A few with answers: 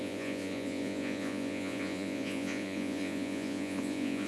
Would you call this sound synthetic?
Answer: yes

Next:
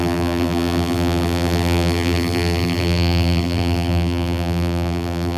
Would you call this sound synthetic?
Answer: yes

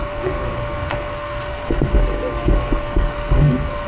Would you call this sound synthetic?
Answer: yes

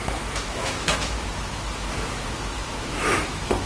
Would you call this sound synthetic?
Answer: yes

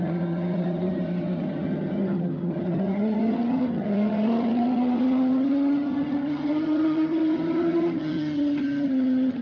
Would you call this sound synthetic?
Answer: yes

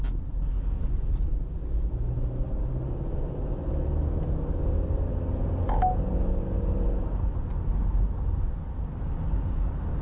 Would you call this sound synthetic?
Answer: no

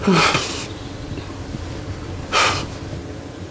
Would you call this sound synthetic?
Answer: no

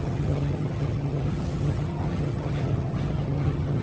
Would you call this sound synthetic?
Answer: yes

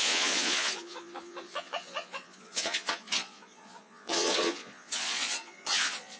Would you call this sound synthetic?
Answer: yes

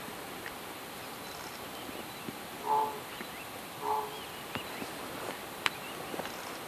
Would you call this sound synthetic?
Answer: no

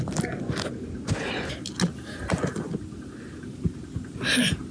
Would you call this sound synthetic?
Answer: no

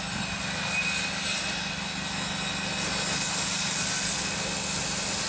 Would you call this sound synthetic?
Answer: no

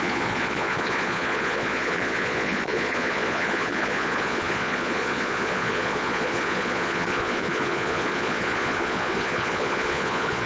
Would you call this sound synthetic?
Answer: yes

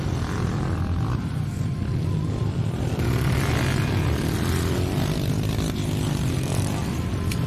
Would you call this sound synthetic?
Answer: no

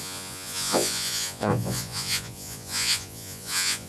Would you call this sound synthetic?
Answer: yes